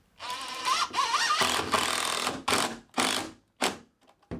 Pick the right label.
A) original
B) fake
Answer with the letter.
A